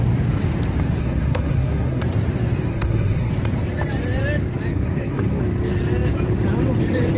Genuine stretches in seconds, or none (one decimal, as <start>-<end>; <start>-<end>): 0.0-1.0; 2.0-2.7; 3.3-4.7; 5.4-7.2